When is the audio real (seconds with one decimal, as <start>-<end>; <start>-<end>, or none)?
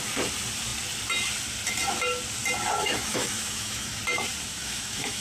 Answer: 0.0-2.8; 4.0-4.5